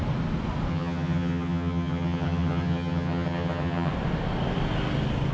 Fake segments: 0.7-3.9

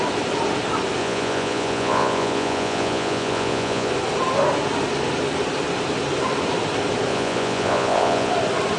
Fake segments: 1.0-3.9; 7.1-8.3

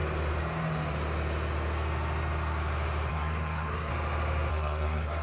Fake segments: 3.1-3.9; 4.5-5.2

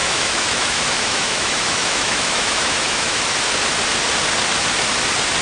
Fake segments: 0.0-3.2